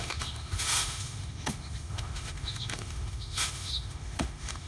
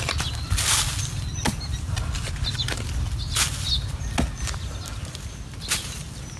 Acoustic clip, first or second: second